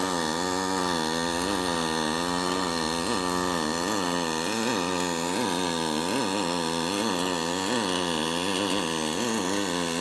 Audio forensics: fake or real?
real